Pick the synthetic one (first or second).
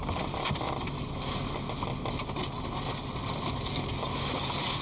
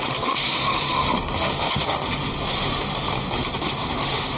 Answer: second